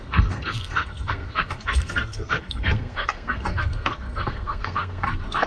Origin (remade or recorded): remade